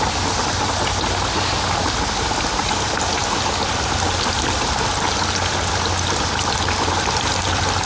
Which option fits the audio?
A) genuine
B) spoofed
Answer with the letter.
A